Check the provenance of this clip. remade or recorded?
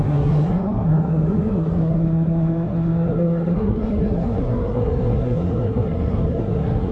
remade